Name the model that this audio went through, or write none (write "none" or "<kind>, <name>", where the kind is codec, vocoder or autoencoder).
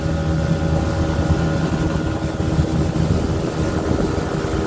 none